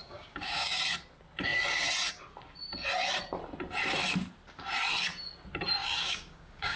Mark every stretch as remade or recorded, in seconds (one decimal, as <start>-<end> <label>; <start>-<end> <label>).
0.0-0.8 remade; 0.8-5.8 recorded; 5.8-6.8 remade